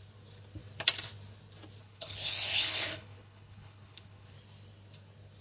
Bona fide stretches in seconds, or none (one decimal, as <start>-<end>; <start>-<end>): 0.0-1.8; 4.3-5.4